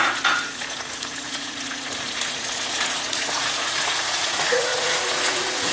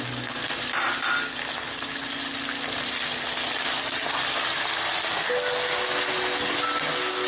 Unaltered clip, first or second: second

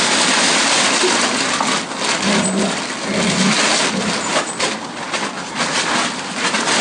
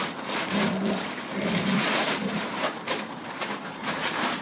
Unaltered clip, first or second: first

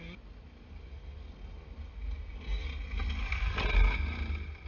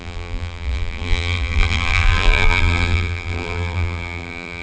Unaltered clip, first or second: first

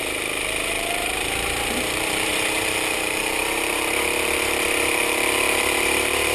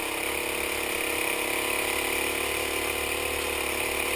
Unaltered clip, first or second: second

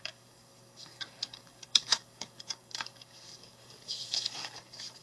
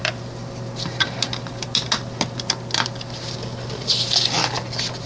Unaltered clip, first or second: second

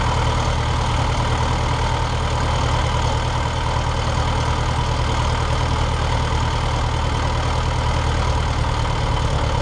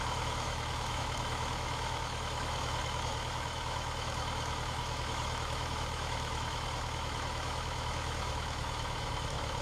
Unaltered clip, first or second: first